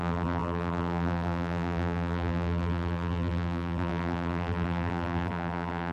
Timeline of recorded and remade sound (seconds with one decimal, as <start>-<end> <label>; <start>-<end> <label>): 0.0-5.9 remade